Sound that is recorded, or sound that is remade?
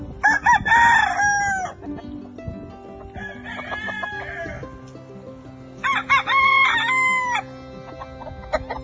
recorded